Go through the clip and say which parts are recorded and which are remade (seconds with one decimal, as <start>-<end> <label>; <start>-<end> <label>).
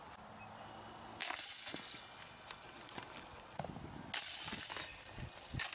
0.0-5.7 recorded